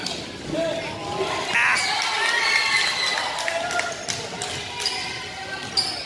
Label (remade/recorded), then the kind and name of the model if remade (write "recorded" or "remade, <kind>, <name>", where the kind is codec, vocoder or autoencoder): recorded